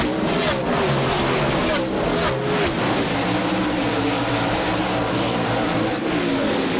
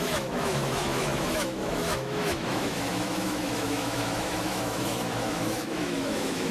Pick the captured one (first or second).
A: first